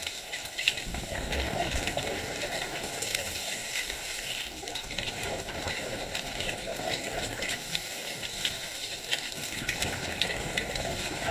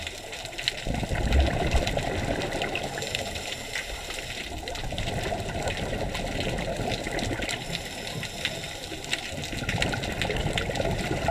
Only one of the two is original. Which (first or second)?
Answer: second